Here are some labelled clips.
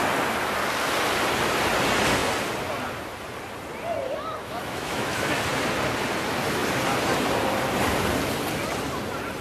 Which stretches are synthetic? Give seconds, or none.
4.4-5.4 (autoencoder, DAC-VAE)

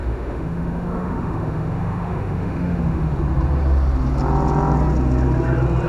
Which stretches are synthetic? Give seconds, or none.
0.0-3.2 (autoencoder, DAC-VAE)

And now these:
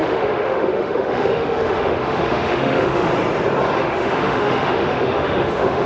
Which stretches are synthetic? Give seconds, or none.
0.0-3.1 (autoencoder, DAC-VAE); 3.8-5.9

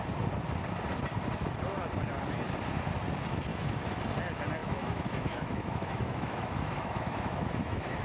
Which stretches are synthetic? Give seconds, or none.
3.5-4.0 (autoencoder, DAC-VAE); 4.6-8.0

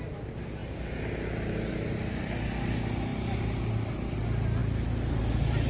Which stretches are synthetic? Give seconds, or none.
none

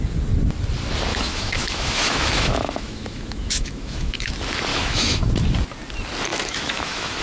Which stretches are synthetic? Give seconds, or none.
1.1-4.3 (autoencoder, DAC-VAE); 4.7-5.2; 6.3-7.2

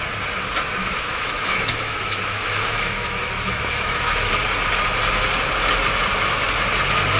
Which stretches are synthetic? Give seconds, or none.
0.8-4.3 (autoencoder, DAC-VAE)